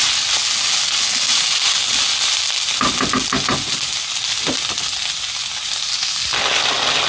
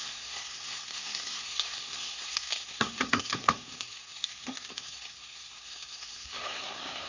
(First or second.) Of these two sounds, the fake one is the second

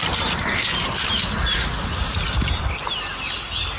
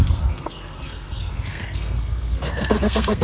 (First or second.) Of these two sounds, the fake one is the second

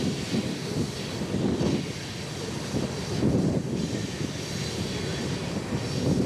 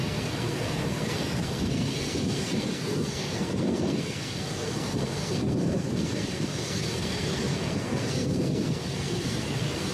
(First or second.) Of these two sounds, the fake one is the second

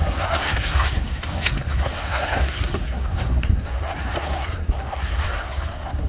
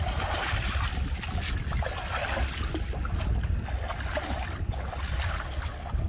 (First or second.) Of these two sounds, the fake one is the first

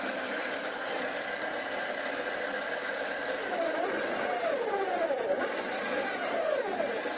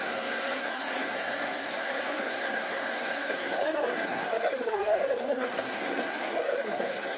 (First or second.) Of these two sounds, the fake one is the second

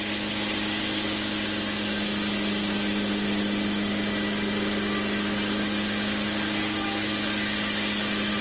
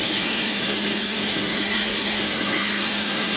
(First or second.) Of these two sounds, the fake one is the second